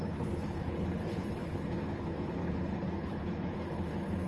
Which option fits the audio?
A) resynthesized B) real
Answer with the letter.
A